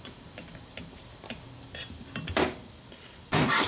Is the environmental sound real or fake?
real